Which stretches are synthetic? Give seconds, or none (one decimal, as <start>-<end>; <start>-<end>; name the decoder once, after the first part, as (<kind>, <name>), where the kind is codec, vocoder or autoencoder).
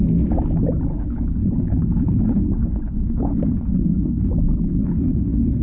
0.9-4.3 (codec, HILCodec); 4.7-5.6